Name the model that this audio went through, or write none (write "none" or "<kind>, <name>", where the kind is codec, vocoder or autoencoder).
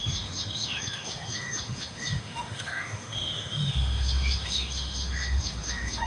autoencoder, DAC-VAE